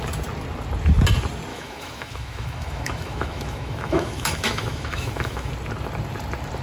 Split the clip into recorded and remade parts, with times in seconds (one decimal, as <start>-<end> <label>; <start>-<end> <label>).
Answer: 0.0-1.5 recorded; 1.5-5.5 remade; 5.5-6.6 recorded